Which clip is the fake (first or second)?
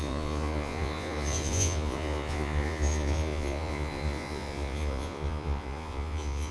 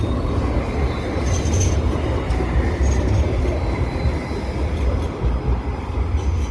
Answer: first